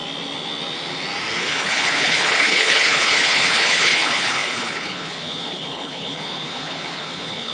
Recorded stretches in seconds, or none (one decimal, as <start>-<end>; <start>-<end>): 0.0-1.4